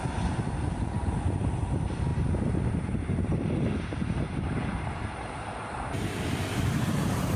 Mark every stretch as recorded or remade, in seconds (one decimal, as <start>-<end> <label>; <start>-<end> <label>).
0.0-7.4 remade